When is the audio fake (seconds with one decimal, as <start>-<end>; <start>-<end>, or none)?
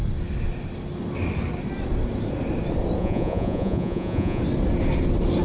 3.0-4.4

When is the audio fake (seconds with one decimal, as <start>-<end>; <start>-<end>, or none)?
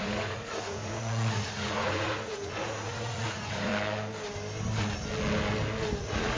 0.0-3.7; 6.0-6.4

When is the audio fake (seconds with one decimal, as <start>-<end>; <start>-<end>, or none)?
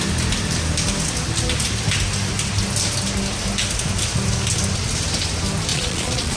5.7-6.4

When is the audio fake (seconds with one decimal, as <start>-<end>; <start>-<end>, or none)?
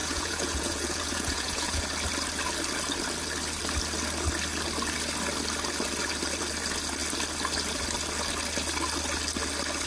0.0-1.8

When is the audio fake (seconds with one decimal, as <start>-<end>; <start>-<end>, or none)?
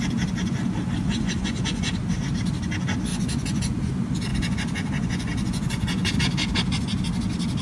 1.0-2.0; 3.1-3.9; 4.3-6.1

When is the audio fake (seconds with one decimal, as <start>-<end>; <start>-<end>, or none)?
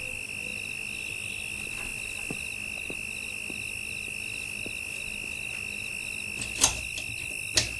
none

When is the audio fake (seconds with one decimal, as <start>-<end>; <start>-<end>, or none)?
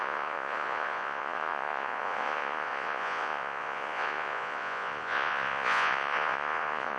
0.0-7.0